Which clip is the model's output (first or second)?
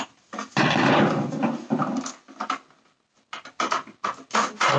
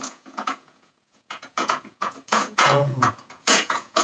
second